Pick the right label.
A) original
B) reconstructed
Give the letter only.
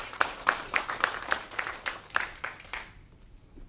B